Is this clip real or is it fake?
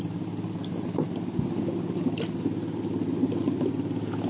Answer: real